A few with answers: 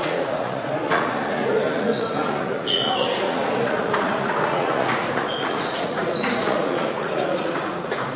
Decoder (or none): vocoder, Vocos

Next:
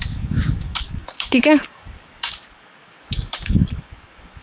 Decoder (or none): codec, DAC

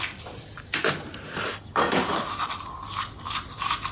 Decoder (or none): none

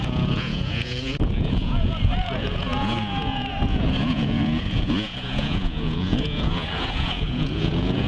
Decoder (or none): vocoder, Vocos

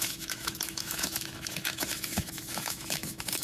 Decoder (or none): autoencoder, DAC-VAE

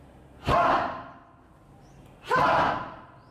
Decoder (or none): none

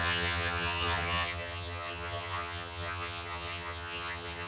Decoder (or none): vocoder, HiFi-GAN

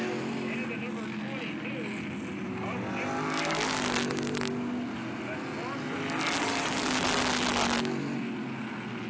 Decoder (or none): none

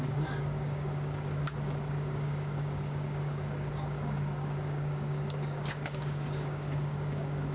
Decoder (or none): codec, DAC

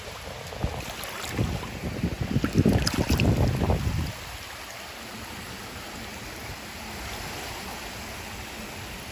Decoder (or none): none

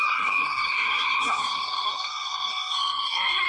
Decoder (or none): codec, SNAC